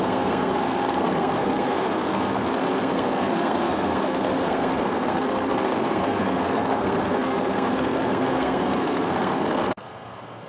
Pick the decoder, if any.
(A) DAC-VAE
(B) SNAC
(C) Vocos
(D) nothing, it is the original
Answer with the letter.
B